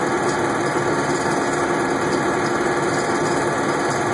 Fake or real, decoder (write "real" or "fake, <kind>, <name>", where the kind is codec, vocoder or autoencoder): real